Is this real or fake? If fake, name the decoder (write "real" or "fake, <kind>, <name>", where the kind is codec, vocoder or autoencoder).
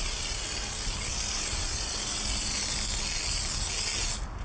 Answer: real